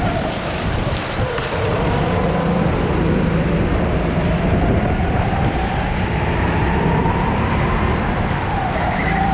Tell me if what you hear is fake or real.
fake